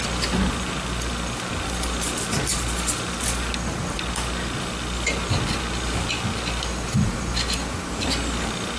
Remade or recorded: recorded